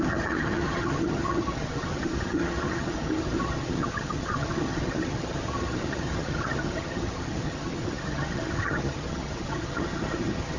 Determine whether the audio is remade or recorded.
remade